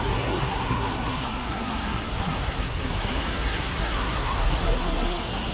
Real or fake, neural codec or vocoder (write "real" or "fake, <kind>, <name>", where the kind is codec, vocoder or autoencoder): fake, codec, SNAC